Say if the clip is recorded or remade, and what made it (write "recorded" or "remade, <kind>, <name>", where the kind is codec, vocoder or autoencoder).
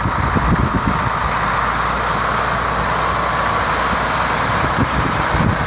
recorded